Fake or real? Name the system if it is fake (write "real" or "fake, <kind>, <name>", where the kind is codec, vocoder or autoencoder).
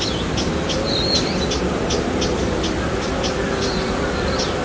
real